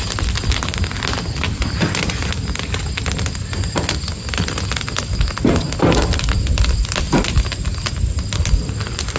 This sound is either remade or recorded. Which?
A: recorded